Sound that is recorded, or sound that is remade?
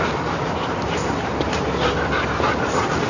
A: remade